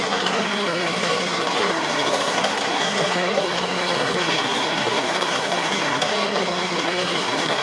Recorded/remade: remade